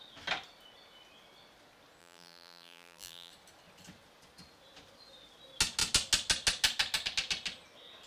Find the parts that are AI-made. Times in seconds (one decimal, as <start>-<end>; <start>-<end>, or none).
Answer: 2.0-3.3